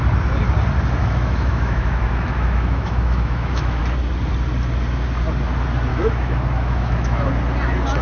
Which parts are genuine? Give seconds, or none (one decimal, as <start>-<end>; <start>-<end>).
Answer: 0.0-1.0; 3.8-5.9; 7.3-8.0